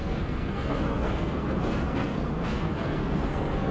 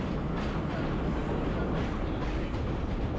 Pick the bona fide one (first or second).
second